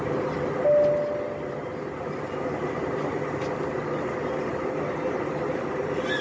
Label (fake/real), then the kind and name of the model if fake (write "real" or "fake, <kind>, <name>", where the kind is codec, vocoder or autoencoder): real